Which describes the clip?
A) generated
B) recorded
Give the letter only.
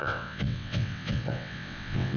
A